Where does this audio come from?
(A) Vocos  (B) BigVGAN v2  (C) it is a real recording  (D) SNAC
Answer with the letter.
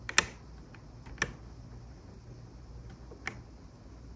C